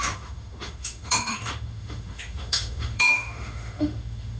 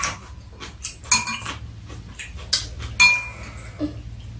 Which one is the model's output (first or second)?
first